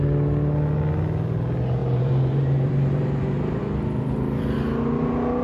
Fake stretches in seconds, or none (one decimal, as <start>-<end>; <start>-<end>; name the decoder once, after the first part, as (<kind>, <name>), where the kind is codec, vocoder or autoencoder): 1.8-3.6 (vocoder, BigVGAN v2)